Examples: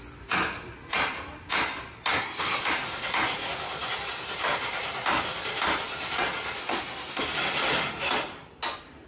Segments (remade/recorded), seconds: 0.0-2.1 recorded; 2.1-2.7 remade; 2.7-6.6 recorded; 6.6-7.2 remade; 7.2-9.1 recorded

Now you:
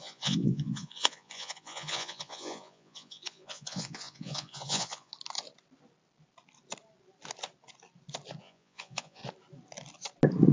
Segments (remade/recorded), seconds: 0.0-5.1 remade; 5.1-8.4 recorded; 8.4-9.2 remade; 9.2-10.5 recorded

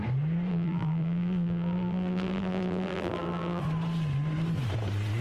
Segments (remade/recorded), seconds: 0.0-0.5 recorded; 0.5-3.6 remade; 3.6-5.2 recorded

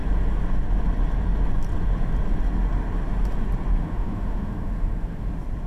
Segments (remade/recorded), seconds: 0.0-3.8 recorded; 3.8-5.3 remade; 5.3-5.7 recorded

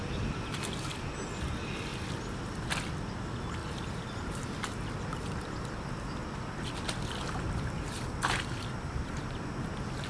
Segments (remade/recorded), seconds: 0.0-0.5 remade; 0.5-3.6 recorded; 3.6-5.7 remade; 5.7-10.1 recorded

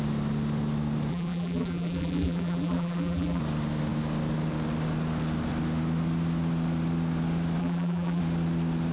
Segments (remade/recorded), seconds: 0.0-1.1 recorded; 1.1-3.4 remade; 3.4-7.6 recorded; 7.6-8.2 remade; 8.2-8.9 recorded

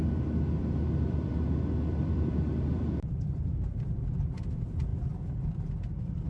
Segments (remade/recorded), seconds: 0.0-0.6 recorded; 0.6-4.0 remade; 4.0-6.3 recorded